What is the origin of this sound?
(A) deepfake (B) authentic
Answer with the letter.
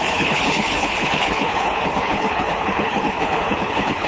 A